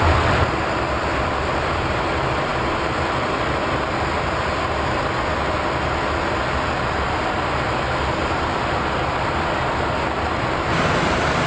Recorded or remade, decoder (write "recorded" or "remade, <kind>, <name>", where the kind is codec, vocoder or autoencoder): recorded